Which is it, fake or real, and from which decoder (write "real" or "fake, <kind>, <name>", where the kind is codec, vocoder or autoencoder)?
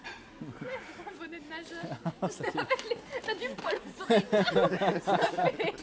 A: real